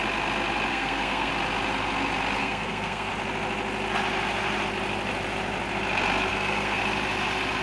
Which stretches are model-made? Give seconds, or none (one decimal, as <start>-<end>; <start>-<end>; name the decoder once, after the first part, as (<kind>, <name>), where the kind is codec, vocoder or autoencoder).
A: 0.7-1.3 (codec, SNAC); 2.4-3.1; 6.3-6.8